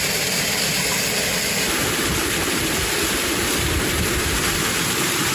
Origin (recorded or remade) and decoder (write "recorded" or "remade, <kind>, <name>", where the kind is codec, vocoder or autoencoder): remade, vocoder, BigVGAN v2